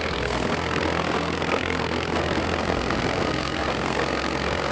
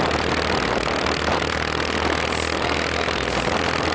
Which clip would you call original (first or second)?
second